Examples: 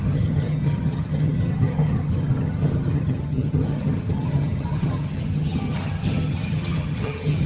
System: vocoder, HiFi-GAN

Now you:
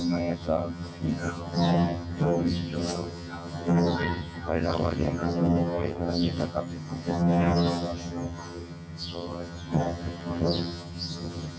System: vocoder, HiFi-GAN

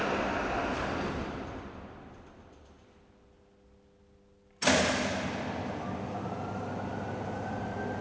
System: none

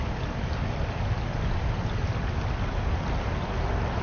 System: none